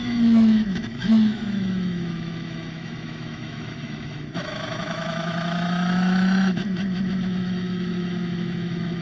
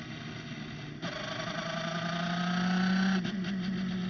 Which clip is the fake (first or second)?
first